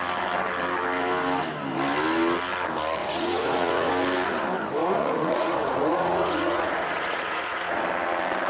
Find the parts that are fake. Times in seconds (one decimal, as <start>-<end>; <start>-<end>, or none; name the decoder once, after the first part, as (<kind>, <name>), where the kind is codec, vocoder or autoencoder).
3.0-3.9 (vocoder, Vocos); 4.8-7.8